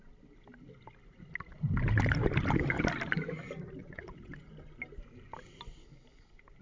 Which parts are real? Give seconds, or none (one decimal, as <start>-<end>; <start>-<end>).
0.0-3.8; 4.5-6.6